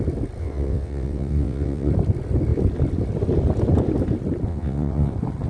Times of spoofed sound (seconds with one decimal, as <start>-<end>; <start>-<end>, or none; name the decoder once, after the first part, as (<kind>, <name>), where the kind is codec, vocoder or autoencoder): 0.4-1.9 (vocoder, WaveNeXt); 4.5-5.1